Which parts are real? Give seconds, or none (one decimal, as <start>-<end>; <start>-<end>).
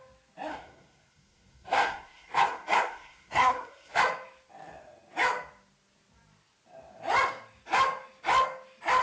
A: 0.0-0.5; 4.0-9.0